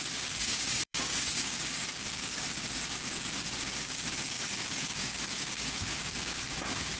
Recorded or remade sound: remade